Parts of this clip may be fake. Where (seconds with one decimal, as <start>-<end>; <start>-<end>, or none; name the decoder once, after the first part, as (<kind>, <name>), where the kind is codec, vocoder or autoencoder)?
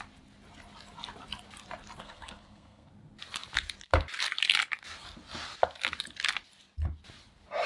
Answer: 2.0-2.9 (codec, SNAC)